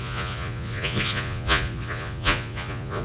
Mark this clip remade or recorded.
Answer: remade